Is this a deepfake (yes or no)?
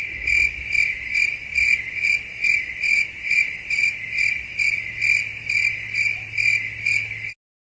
no